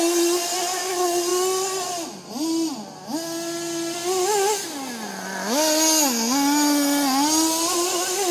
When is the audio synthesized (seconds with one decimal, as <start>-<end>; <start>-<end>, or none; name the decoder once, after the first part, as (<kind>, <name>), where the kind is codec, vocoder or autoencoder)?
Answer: none